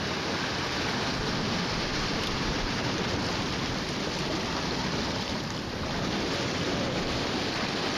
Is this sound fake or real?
real